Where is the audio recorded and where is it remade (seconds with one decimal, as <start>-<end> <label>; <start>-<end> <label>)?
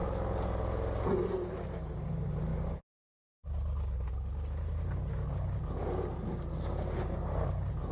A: 0.0-7.9 recorded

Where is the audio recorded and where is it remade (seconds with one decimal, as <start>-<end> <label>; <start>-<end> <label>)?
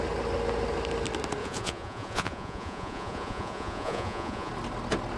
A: 0.0-1.4 recorded; 1.4-4.5 remade; 4.5-5.2 recorded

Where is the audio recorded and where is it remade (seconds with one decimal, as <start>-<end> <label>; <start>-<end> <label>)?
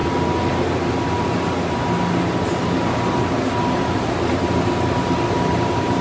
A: 0.0-3.6 recorded; 3.6-6.0 remade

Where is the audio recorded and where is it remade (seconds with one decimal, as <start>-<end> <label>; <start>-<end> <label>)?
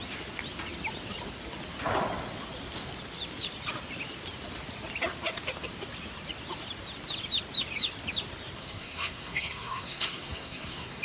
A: 0.0-8.6 recorded; 8.6-11.0 remade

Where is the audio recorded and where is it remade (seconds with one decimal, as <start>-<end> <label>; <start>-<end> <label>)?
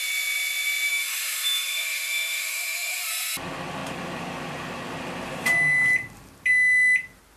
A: 0.0-0.9 recorded; 0.9-3.1 remade; 3.1-7.4 recorded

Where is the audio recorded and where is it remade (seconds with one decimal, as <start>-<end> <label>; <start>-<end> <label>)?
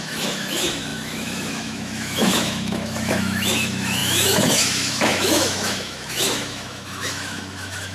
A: 0.0-7.9 remade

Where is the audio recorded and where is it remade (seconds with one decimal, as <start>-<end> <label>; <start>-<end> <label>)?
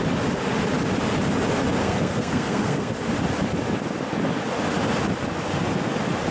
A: 0.0-1.8 recorded; 1.8-2.9 remade; 2.9-6.3 recorded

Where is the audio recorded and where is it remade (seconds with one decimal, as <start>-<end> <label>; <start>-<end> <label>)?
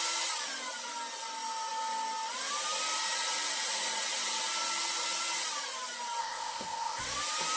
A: 0.0-6.2 recorded; 6.2-7.0 remade; 7.0-7.6 recorded